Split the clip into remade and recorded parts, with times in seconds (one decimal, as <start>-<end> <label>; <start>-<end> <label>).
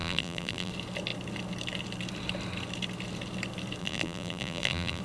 0.0-0.7 remade; 0.7-3.8 recorded; 3.8-5.0 remade